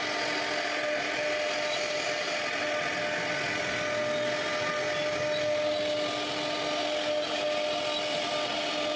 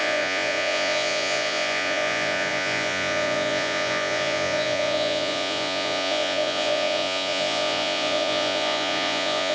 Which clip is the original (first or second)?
first